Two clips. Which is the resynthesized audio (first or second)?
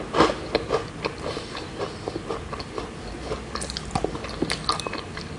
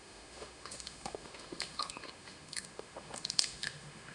second